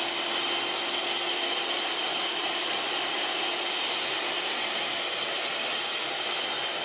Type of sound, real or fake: real